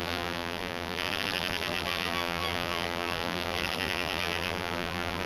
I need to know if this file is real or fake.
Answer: fake